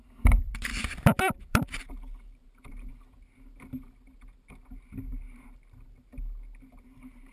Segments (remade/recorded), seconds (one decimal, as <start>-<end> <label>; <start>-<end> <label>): 0.0-0.7 remade; 0.7-1.2 recorded; 1.2-2.9 remade; 2.9-5.0 recorded; 5.0-6.1 remade; 6.1-6.8 recorded; 6.8-7.3 remade